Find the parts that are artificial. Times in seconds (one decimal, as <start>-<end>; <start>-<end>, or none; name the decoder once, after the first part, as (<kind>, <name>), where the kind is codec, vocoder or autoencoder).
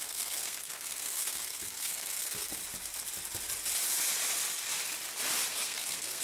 0.0-2.6 (codec, SNAC); 5.5-6.2